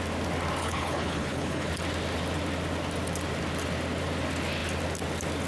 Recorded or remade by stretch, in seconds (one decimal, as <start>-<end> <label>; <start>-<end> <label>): 0.0-0.6 recorded; 0.6-1.7 remade; 1.7-5.5 recorded